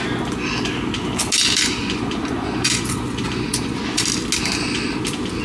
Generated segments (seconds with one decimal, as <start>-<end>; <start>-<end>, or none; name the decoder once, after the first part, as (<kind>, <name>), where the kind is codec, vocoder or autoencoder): 1.8-4.0 (vocoder, Vocos)